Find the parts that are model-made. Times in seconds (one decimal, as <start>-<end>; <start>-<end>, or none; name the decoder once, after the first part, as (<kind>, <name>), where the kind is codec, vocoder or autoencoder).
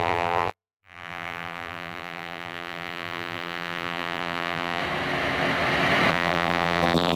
0.0-4.8 (vocoder, BigVGAN v2); 6.1-7.2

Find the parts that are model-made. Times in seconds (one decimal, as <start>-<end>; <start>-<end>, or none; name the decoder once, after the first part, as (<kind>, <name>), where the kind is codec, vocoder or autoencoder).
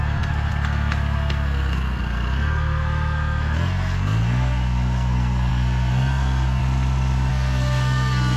0.0-6.6 (codec, SNAC); 7.3-8.4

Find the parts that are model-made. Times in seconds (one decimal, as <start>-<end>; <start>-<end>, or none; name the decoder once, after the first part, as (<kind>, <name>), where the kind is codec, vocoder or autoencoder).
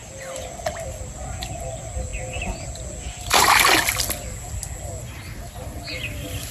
none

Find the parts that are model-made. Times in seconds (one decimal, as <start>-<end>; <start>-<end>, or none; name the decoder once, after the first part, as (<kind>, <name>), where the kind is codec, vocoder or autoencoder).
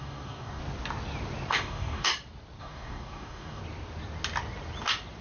0.0-0.6 (codec, DAC); 1.5-2.1; 2.6-3.6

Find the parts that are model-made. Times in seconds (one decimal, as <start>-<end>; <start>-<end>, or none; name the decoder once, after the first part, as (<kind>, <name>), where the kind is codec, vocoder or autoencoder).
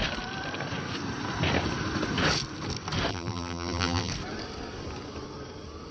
3.1-4.1 (vocoder, BigVGAN v2)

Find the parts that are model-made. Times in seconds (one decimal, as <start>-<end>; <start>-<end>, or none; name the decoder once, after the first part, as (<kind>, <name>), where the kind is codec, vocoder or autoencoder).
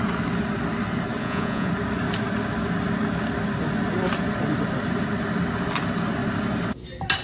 1.2-1.7 (vocoder, Vocos)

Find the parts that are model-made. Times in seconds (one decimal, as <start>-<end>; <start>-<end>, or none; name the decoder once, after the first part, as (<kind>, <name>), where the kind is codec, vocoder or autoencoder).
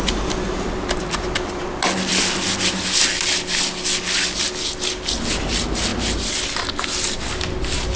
none